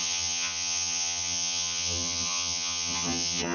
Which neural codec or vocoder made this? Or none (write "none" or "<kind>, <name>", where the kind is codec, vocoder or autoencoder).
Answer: vocoder, HiFi-GAN